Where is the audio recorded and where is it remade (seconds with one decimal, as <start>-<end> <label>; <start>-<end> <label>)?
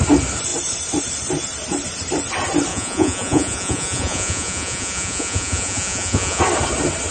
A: 0.0-2.7 recorded; 2.7-6.4 remade; 6.4-7.1 recorded